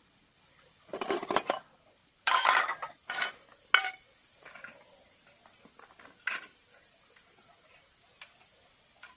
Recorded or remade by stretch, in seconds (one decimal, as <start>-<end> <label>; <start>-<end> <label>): 0.0-9.2 recorded